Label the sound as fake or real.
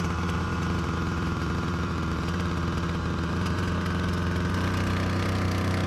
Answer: fake